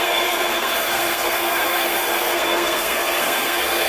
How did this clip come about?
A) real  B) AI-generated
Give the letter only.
B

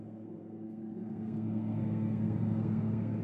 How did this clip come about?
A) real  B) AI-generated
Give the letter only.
B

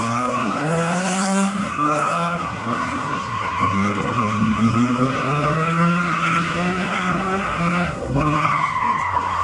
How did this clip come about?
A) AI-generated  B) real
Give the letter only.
A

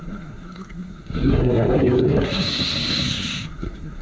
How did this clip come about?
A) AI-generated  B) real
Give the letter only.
A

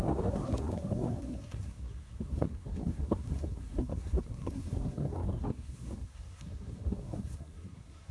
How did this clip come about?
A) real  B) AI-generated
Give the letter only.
B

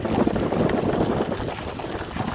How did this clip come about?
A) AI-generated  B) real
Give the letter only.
B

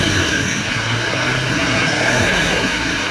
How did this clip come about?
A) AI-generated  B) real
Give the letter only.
A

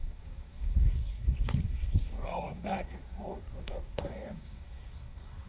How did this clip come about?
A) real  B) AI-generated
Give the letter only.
B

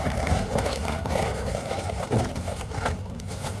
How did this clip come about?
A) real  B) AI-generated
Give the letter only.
B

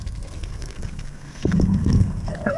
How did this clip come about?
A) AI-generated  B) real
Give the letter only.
A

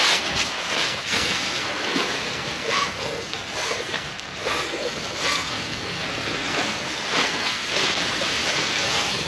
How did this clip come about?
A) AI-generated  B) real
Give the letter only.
A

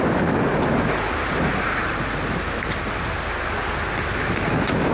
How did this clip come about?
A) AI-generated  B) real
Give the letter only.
B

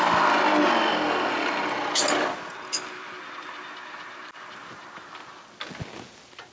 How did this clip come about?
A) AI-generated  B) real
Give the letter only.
B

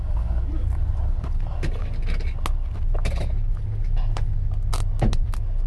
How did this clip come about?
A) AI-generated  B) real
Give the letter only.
B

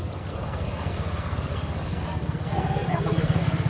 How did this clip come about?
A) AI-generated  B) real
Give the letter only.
A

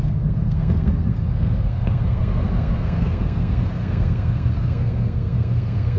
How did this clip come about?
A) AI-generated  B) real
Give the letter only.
A